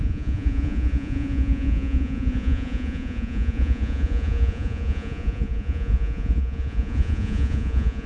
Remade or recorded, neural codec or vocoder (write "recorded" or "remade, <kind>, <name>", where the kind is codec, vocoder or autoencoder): remade, vocoder, Vocos